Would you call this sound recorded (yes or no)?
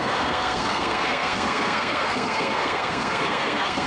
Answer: no